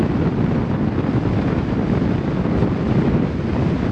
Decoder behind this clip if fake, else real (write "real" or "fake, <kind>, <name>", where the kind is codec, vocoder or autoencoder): real